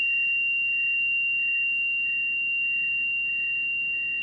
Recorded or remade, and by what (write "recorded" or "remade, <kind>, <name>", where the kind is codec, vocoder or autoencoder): recorded